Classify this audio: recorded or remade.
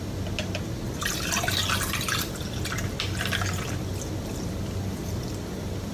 recorded